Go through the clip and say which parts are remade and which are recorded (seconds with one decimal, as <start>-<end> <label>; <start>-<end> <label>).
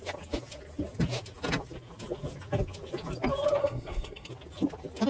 0.0-3.6 recorded; 3.6-4.3 remade; 4.3-5.1 recorded